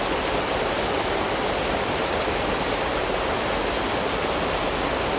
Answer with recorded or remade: recorded